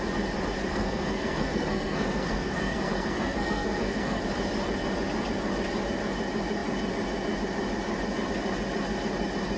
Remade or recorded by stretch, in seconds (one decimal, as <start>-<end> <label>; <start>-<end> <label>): 0.0-0.7 recorded; 0.7-4.2 remade; 4.2-9.6 recorded